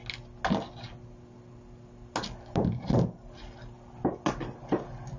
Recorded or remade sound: recorded